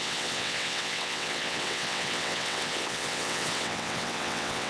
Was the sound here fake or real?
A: fake